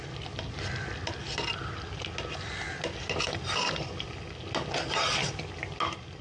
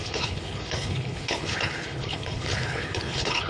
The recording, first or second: first